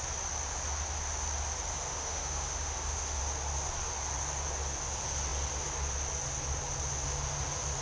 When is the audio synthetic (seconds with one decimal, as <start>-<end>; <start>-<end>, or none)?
1.7-3.2